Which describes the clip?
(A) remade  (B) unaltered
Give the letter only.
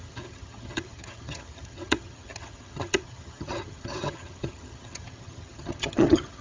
A